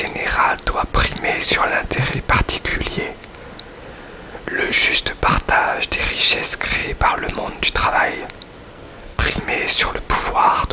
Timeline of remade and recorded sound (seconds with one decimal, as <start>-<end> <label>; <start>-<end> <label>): 0.0-8.7 recorded; 8.7-9.4 remade; 9.4-10.7 recorded